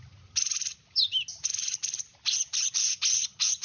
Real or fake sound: real